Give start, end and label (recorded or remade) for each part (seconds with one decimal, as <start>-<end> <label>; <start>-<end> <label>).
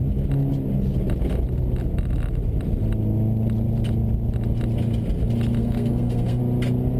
0.0-5.6 recorded; 5.6-6.4 remade; 6.4-7.0 recorded